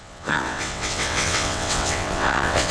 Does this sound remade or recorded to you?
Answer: remade